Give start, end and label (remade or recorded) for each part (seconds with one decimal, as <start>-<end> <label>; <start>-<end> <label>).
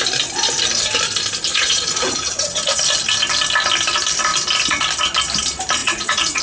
0.0-1.5 recorded; 1.5-2.8 remade; 2.8-5.8 recorded; 5.8-6.4 remade